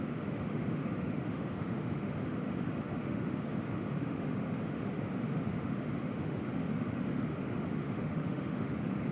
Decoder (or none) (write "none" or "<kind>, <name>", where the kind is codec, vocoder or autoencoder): autoencoder, DAC-VAE